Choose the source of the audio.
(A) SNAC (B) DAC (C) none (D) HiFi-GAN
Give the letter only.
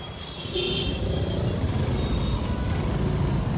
C